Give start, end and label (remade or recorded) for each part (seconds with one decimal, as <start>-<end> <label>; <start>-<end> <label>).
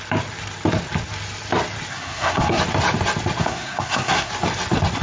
0.0-1.9 recorded; 1.9-2.6 remade; 2.6-3.4 recorded; 3.4-4.3 remade; 4.3-5.0 recorded